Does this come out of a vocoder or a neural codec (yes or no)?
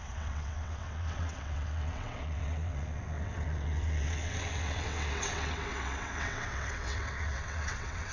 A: yes